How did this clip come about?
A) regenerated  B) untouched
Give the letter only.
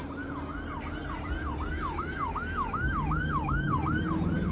B